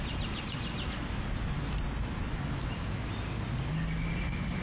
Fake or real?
real